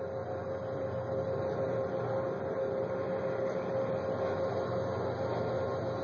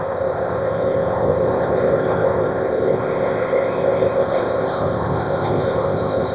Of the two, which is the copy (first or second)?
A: second